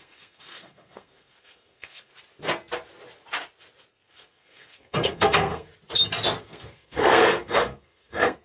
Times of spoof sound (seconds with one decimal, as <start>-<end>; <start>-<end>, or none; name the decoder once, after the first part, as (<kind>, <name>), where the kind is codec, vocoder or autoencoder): 0.0-2.1 (codec, SNAC); 3.9-5.7; 6.4-8.4